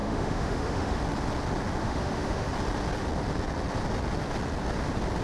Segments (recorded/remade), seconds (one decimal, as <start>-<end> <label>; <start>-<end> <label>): 0.0-1.0 remade; 1.0-1.8 recorded; 1.8-2.5 remade; 2.5-5.2 recorded